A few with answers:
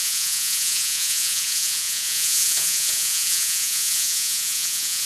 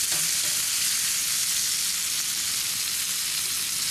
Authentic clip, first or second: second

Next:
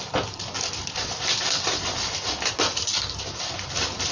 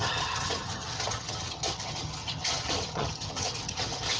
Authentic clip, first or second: first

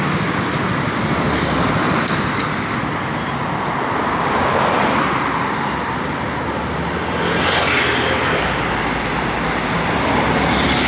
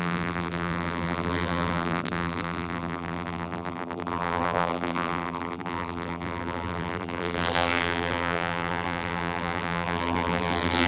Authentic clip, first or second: first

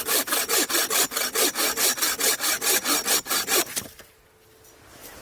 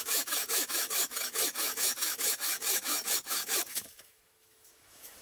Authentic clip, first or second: first